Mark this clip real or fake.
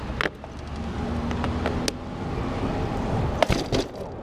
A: real